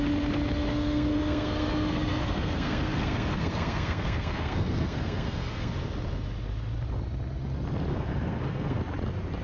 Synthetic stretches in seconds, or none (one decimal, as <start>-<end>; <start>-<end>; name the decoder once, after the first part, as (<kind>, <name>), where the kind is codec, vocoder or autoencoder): 0.7-5.7 (codec, SNAC); 7.9-8.8